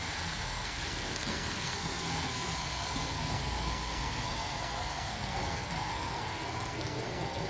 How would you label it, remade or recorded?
remade